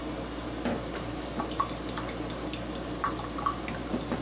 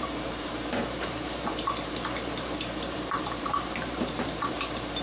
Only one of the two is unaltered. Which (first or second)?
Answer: first